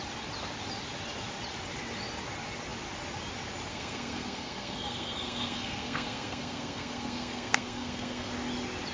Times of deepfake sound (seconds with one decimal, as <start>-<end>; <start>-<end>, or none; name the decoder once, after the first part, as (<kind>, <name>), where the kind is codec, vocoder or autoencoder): 3.7-8.3 (codec, SNAC)